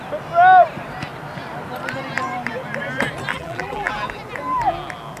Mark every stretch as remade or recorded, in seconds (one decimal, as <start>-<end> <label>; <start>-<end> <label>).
0.0-3.3 recorded; 3.3-3.9 remade; 3.9-5.2 recorded